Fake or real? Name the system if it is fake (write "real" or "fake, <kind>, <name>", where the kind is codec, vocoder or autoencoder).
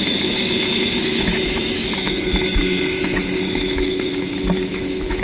fake, autoencoder, DAC-VAE